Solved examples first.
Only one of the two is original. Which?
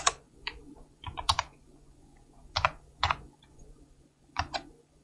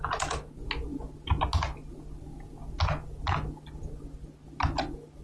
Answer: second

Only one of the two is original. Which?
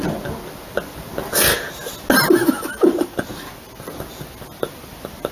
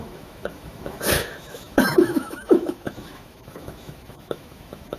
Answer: first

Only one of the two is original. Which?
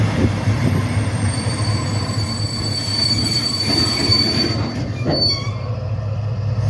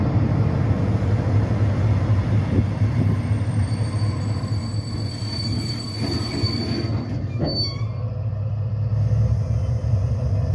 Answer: second